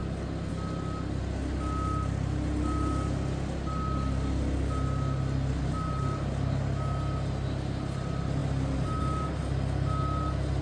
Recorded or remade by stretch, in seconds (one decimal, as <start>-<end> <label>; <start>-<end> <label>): 0.0-10.6 recorded